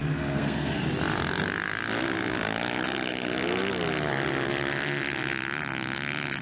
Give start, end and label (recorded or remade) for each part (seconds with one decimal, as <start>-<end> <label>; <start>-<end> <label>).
0.0-0.8 remade; 0.8-6.4 recorded